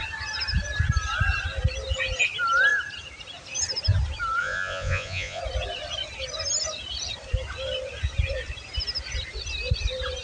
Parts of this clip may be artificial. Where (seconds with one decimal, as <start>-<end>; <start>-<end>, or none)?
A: 4.4-5.4